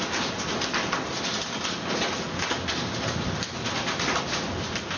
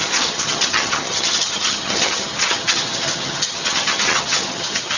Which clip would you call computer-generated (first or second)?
second